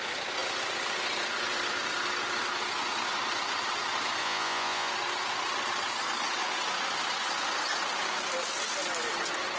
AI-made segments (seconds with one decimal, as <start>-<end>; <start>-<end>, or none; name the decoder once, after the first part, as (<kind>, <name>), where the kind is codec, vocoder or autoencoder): 4.2-4.9 (vocoder, Vocos)